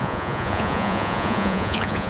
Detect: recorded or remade remade